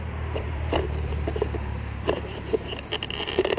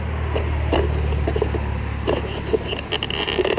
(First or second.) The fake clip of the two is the first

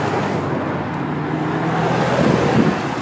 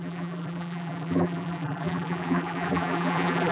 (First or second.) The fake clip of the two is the second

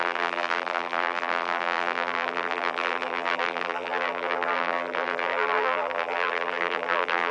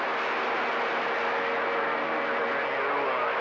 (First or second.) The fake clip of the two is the first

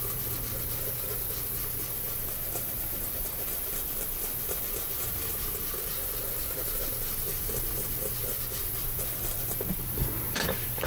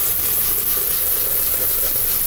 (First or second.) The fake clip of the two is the first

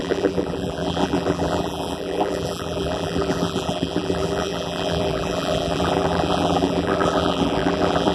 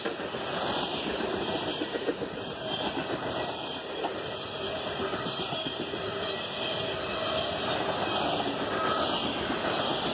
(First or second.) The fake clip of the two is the first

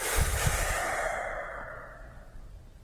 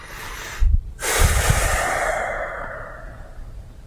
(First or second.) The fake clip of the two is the second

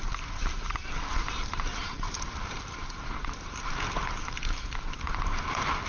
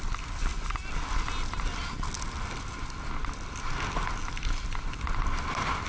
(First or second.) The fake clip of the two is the first